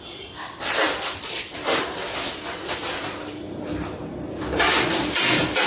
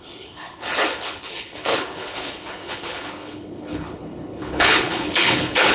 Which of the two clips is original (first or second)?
first